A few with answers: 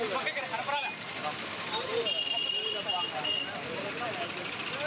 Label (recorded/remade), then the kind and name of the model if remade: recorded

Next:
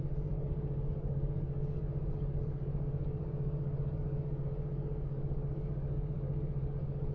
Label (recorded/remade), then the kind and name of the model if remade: remade, codec, DAC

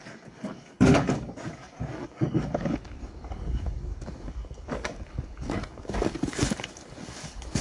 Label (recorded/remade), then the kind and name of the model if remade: remade, codec, DAC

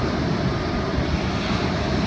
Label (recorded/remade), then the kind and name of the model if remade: recorded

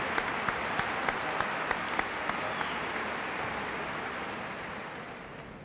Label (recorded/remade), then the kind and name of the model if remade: recorded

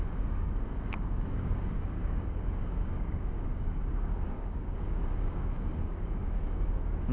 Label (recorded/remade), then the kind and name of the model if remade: remade, codec, DAC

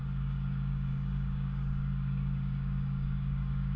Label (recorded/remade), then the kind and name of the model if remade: remade, codec, DAC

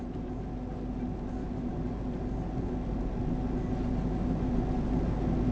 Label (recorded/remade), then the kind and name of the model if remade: recorded